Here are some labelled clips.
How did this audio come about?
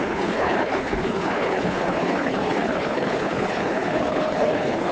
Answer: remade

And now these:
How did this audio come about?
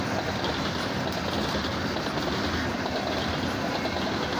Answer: recorded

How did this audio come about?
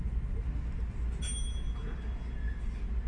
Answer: recorded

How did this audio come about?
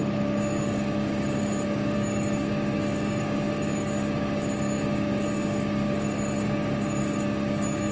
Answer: remade